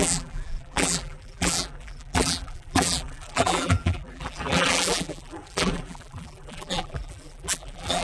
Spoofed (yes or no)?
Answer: yes